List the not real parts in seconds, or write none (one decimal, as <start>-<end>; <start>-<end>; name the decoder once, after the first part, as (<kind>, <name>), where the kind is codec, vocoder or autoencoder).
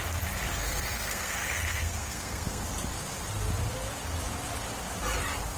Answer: 0.5-2.7 (codec, SNAC)